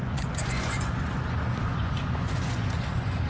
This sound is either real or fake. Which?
fake